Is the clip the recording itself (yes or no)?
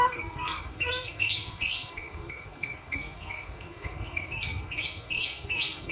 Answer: no